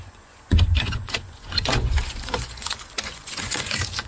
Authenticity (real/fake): fake